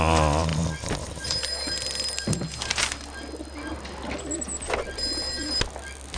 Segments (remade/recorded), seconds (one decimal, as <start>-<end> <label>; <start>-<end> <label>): 0.0-6.2 recorded